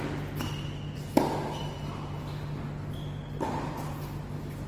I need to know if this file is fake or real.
real